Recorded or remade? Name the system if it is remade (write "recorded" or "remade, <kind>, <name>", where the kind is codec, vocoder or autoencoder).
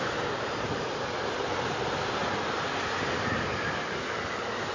recorded